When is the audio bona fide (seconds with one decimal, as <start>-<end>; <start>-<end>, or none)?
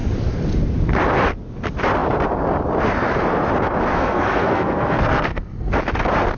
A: 0.0-3.9; 5.7-6.4